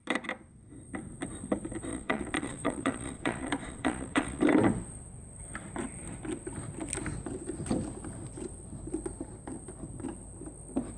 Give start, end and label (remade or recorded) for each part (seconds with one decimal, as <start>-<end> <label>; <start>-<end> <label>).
0.0-1.9 recorded; 1.9-4.4 remade; 4.4-11.0 recorded